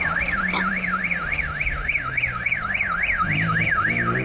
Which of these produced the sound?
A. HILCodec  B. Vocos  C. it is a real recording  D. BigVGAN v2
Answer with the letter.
D